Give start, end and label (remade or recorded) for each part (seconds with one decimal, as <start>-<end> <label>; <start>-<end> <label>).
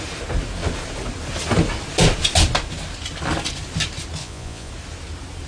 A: 0.0-4.2 recorded; 4.2-4.7 remade; 4.7-5.5 recorded